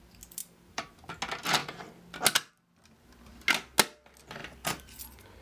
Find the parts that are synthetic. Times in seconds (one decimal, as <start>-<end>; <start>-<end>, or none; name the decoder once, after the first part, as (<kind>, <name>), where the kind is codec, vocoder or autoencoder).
0.4-0.9 (vocoder, BigVGAN v2); 4.4-5.0